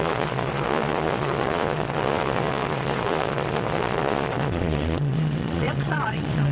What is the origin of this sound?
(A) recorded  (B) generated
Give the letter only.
B